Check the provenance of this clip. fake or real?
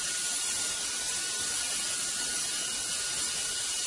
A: real